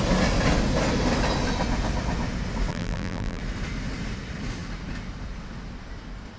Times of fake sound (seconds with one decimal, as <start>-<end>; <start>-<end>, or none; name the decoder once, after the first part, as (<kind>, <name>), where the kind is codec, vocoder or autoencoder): 2.7-3.4 (vocoder, BigVGAN v2)